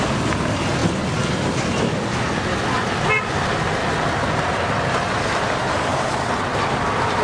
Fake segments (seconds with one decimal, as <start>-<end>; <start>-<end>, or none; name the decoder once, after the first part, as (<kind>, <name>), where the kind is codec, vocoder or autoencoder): none